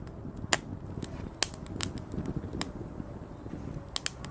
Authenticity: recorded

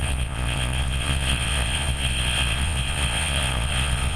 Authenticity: remade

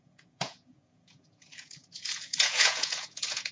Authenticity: remade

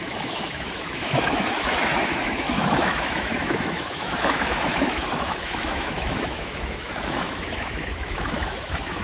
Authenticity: remade